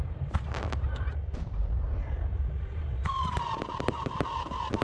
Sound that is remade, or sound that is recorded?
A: remade